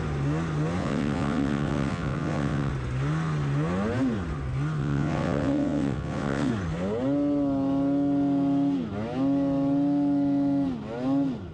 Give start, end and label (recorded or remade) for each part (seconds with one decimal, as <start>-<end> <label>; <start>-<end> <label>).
0.0-0.8 recorded; 0.8-2.7 remade; 2.7-4.8 recorded; 4.8-6.5 remade; 6.5-11.5 recorded